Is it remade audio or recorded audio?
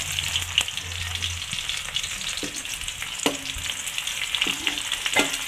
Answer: recorded